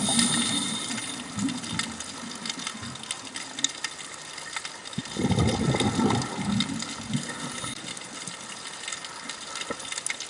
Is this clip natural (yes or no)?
yes